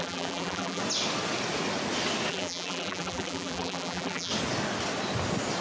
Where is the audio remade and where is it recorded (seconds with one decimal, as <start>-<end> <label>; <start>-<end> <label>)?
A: 0.0-0.8 remade; 0.8-2.3 recorded; 2.3-4.3 remade; 4.3-5.6 recorded